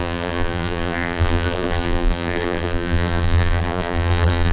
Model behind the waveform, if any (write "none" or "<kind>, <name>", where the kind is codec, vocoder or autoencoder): vocoder, BigVGAN v2